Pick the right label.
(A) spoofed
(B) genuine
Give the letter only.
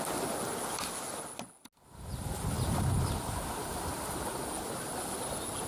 B